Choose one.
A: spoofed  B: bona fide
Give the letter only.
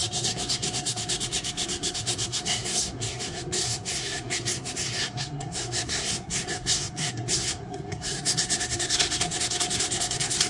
A